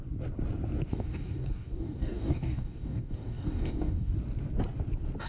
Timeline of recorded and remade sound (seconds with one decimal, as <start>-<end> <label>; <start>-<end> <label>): 0.0-0.9 recorded; 0.9-4.1 remade; 4.1-5.3 recorded

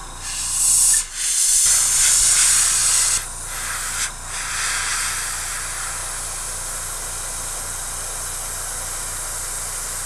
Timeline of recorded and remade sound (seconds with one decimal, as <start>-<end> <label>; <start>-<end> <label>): 0.0-2.8 remade; 2.8-4.5 recorded; 4.5-6.0 remade; 6.0-9.3 recorded; 9.3-10.1 remade

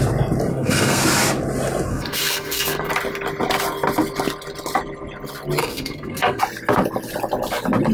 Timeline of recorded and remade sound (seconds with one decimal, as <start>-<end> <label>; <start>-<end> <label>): 0.0-0.5 recorded; 0.5-1.0 remade; 1.0-1.9 recorded; 1.9-2.9 remade; 2.9-5.6 recorded; 5.6-6.4 remade; 6.4-7.9 recorded

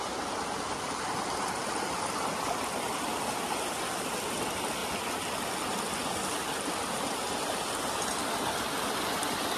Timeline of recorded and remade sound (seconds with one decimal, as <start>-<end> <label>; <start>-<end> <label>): 0.0-9.6 recorded

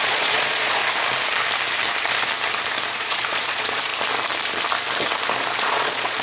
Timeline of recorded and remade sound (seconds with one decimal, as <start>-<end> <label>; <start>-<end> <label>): 0.0-0.8 remade; 0.8-2.9 recorded; 2.9-3.9 remade; 3.9-5.6 recorded; 5.6-6.2 remade

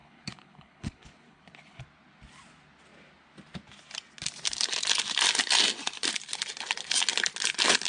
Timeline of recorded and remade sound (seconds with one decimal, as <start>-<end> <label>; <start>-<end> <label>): 0.0-1.8 remade; 1.8-7.9 recorded

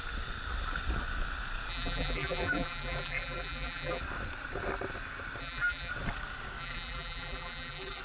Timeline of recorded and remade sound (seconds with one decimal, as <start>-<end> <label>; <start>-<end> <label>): 0.0-1.7 recorded; 1.7-4.0 remade; 4.0-5.4 recorded; 5.4-5.9 remade; 5.9-6.6 recorded; 6.6-8.0 remade